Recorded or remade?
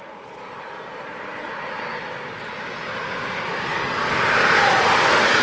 remade